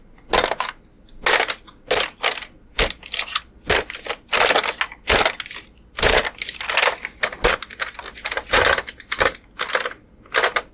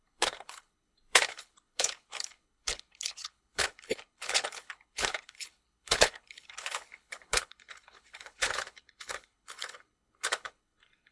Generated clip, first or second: second